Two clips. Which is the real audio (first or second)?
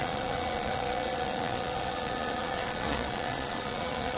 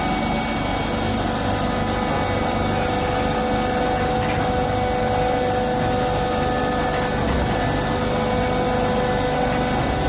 second